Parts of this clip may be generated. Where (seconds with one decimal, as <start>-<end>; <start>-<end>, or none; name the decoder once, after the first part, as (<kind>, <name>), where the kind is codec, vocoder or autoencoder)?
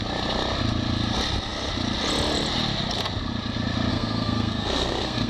3.9-5.3 (codec, SNAC)